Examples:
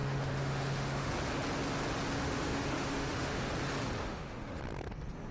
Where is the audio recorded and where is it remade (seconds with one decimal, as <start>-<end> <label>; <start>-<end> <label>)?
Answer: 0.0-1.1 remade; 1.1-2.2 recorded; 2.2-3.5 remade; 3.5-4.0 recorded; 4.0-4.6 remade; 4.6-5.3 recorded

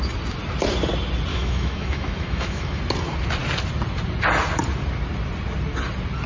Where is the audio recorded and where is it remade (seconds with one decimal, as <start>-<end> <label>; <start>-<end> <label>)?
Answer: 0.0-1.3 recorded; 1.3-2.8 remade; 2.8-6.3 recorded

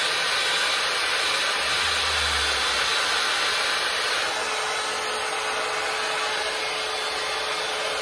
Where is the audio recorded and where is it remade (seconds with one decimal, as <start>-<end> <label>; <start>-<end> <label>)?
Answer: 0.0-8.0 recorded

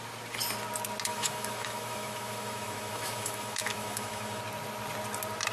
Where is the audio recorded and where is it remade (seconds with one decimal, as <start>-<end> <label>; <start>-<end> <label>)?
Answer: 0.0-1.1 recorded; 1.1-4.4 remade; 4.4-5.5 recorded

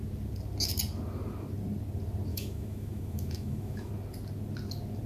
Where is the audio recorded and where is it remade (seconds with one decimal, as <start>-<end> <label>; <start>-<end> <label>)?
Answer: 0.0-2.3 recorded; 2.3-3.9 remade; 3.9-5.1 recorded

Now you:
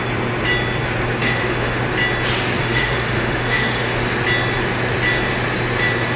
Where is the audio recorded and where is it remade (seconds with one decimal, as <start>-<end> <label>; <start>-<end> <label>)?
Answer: 0.0-1.2 recorded; 1.2-1.8 remade; 1.8-2.6 recorded; 2.6-4.0 remade; 4.0-6.2 recorded

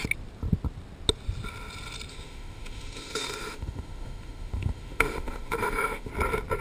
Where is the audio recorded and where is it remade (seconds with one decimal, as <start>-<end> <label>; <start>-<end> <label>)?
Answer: 0.0-2.1 recorded; 2.1-6.1 remade; 6.1-6.6 recorded

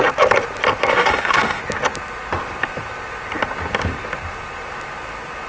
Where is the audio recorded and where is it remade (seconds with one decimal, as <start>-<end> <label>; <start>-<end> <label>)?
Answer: 0.0-0.9 recorded; 0.9-1.6 remade; 1.6-5.5 recorded